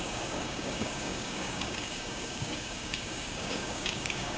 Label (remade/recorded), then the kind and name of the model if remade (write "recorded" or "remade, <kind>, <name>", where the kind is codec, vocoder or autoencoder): remade, codec, DAC